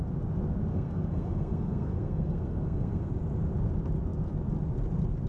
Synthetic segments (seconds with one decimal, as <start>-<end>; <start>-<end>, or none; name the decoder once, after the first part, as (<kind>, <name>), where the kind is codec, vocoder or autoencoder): 0.7-3.1 (codec, SNAC)